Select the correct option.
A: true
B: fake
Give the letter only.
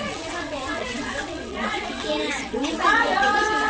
B